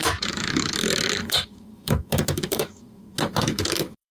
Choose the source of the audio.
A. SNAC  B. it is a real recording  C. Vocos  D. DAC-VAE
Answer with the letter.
D